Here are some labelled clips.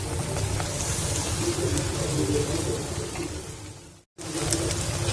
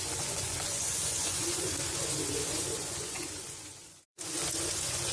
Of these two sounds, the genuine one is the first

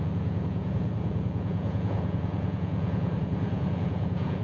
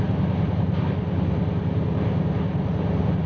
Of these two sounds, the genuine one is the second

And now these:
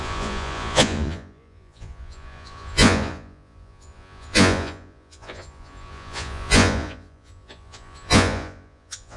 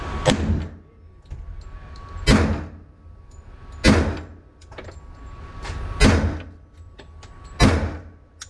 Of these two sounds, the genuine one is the second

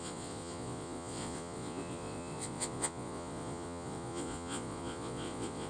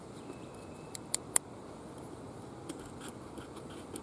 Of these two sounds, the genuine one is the second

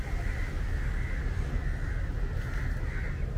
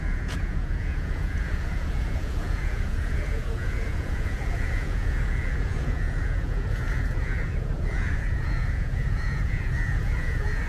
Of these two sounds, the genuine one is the first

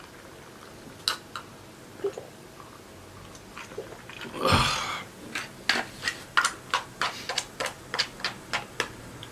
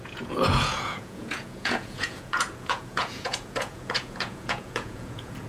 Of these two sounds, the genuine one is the first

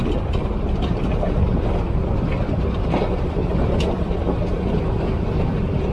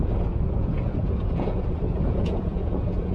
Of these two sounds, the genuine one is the first